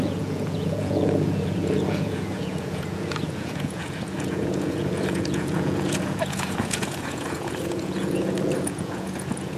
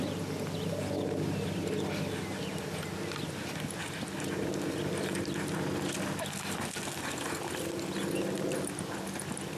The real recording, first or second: second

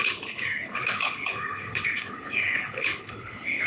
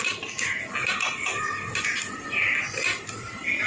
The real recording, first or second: second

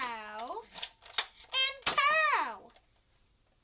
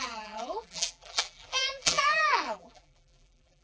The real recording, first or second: first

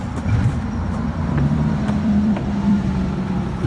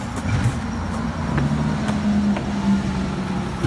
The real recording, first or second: second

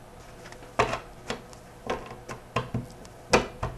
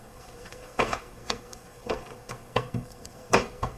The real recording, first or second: first